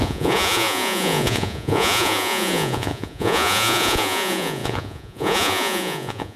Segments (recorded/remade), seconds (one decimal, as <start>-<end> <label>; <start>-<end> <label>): 0.0-6.4 remade